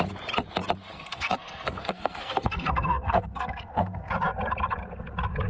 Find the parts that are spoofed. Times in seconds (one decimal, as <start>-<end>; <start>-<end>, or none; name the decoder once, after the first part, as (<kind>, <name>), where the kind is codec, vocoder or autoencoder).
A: 0.9-4.1 (codec, SNAC)